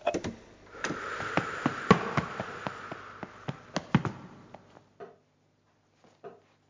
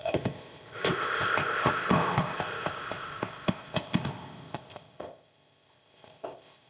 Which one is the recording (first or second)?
first